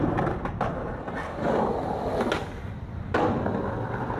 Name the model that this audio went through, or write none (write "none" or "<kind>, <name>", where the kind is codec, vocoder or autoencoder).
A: none